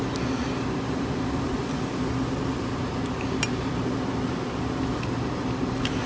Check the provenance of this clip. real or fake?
real